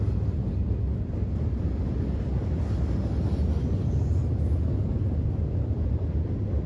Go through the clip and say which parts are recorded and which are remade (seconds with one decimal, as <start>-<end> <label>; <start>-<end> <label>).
0.0-6.7 recorded